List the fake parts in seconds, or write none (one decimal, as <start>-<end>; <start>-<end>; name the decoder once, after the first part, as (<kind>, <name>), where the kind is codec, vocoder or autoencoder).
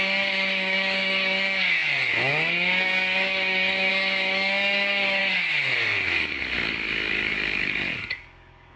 0.0-8.8 (codec, DAC)